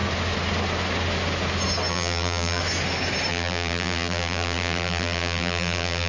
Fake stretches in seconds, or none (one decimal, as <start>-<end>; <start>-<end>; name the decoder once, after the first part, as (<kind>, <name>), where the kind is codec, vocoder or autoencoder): 1.9-2.6 (vocoder, BigVGAN v2); 3.3-6.1